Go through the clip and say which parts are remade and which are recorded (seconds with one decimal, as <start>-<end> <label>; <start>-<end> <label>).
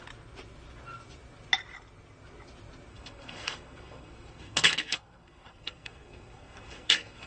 0.0-2.9 recorded; 2.9-7.3 remade